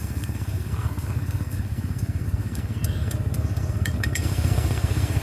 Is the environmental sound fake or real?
fake